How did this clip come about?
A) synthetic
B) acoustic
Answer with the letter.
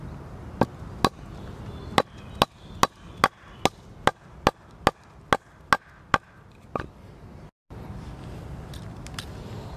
B